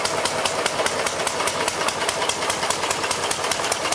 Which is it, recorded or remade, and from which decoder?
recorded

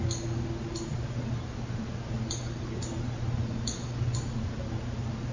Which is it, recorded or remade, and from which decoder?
recorded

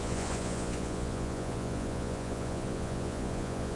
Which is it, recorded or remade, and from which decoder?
remade, vocoder, Vocos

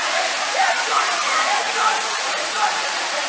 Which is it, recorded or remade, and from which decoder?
remade, vocoder, Vocos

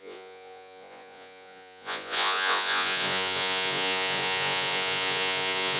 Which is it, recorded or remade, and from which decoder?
remade, vocoder, Vocos